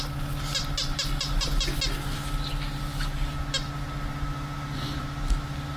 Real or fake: real